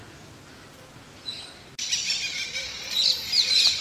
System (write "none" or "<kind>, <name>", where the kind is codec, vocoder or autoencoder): none